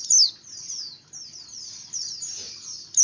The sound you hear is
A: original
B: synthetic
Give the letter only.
A